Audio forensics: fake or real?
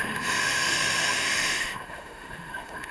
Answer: fake